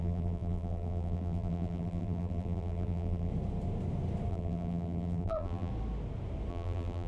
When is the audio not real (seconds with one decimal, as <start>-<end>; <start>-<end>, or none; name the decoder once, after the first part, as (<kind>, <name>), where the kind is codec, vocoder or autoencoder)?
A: 0.0-3.3 (vocoder, BigVGAN v2); 4.3-5.7; 6.5-7.1